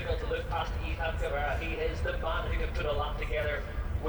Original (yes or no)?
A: no